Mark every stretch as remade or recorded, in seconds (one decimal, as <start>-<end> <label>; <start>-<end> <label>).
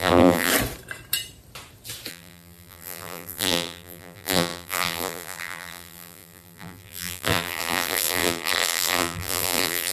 0.0-0.5 remade; 0.5-2.1 recorded; 2.1-9.9 remade